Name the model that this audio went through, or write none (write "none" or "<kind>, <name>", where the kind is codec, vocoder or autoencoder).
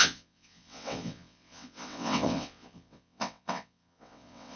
vocoder, WaveNeXt